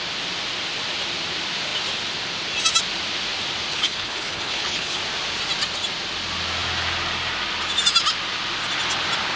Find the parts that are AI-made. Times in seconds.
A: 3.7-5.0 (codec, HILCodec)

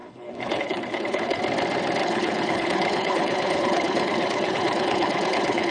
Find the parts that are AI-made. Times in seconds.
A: 0.0-1.4 (codec, HILCodec); 2.0-5.7

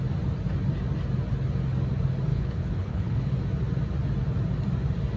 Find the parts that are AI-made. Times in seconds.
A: 2.3-3.3 (codec, HILCodec)

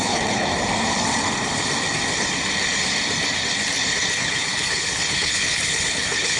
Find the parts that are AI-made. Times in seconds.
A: 0.0-0.5 (codec, HILCodec); 4.1-6.4

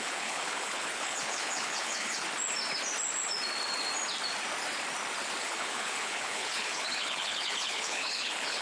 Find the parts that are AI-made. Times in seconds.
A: 0.0-2.2 (codec, HILCodec); 5.4-8.6

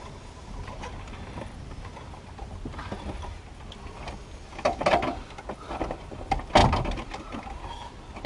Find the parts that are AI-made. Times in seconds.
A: none